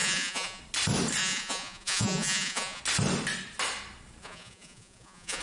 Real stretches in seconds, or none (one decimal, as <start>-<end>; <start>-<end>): 0.6-1.2; 2.8-4.2